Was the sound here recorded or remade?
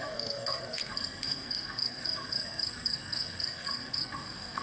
remade